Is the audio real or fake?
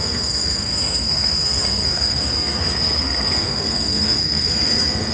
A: fake